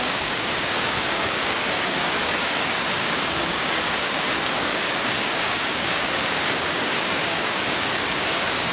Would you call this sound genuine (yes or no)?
no